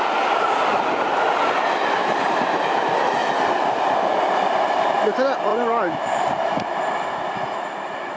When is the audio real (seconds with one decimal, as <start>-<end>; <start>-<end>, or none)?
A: 0.0-2.0; 2.6-5.5; 6.4-8.2